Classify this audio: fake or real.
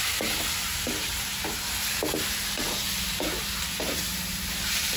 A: real